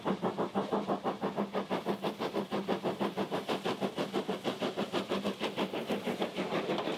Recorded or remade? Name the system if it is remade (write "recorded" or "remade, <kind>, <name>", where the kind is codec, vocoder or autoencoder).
recorded